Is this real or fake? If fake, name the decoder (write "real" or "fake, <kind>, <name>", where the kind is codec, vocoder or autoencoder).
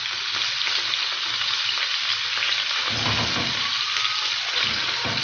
real